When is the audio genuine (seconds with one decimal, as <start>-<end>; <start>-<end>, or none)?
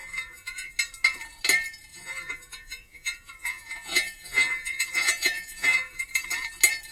0.7-1.9; 6.0-6.9